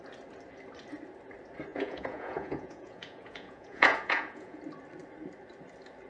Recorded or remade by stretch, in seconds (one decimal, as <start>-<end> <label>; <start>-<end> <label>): 0.0-1.7 recorded; 1.7-4.6 remade; 4.6-6.1 recorded